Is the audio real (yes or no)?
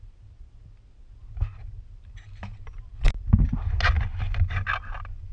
yes